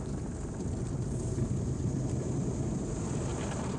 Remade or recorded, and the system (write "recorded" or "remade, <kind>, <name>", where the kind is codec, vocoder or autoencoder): recorded